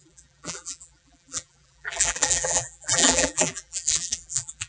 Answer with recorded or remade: remade